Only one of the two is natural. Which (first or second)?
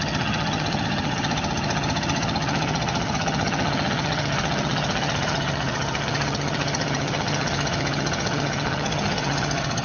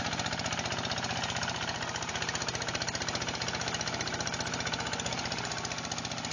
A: second